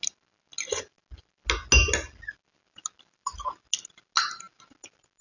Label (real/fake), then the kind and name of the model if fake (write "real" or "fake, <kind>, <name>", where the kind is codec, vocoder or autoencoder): real